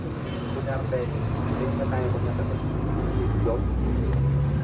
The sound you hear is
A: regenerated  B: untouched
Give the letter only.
B